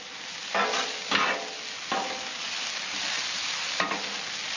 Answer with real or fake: real